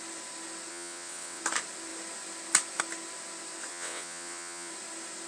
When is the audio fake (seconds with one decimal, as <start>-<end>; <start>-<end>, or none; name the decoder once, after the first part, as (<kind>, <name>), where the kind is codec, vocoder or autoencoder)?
0.7-1.4 (vocoder, WaveNeXt); 3.7-4.7